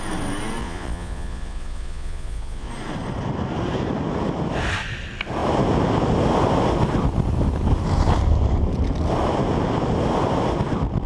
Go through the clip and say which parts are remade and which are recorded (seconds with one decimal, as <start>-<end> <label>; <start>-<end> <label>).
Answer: 0.0-0.6 recorded; 0.6-2.7 remade; 2.7-11.1 recorded